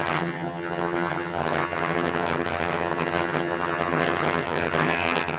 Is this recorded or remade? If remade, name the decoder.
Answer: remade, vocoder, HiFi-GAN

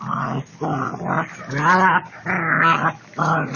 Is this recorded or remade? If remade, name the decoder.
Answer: recorded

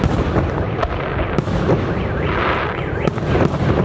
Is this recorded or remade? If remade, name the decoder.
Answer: recorded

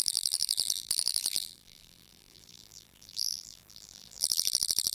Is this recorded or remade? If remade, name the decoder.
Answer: remade, vocoder, BigVGAN v2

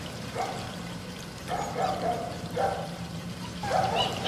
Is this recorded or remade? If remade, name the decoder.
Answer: remade, vocoder, BigVGAN v2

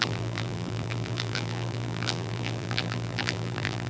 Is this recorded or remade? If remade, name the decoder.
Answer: remade, vocoder, BigVGAN v2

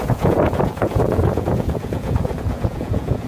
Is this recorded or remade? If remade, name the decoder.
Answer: remade, vocoder, Vocos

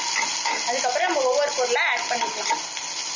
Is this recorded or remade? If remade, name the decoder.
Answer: recorded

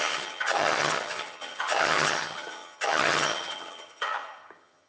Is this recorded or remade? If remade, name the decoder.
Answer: remade, vocoder, HiFi-GAN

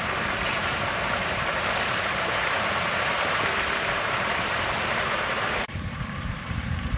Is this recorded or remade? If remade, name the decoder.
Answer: remade, vocoder, BigVGAN v2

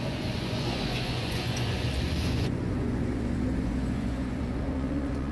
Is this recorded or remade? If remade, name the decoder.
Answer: remade, vocoder, Vocos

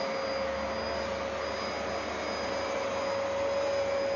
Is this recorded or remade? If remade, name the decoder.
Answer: recorded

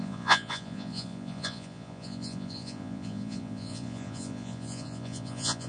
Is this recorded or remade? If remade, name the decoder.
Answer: remade, vocoder, Vocos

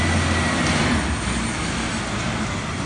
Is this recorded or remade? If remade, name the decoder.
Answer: recorded